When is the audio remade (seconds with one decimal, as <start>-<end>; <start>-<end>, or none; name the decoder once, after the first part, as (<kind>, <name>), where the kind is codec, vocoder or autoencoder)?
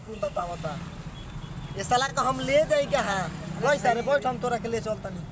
0.0-0.5 (codec, SNAC)